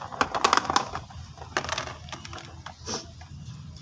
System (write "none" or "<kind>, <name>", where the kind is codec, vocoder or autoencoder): none